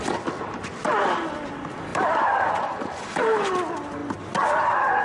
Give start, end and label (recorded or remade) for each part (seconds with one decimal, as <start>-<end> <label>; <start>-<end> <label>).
0.0-1.9 recorded; 1.9-3.5 remade; 3.5-5.0 recorded